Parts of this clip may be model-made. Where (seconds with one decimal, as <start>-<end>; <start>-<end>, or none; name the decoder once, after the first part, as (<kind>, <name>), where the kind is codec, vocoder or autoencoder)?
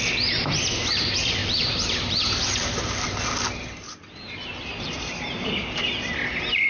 none